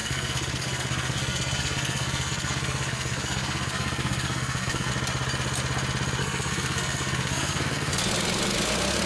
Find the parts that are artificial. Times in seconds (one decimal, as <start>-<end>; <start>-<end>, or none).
0.0-4.9; 6.2-8.1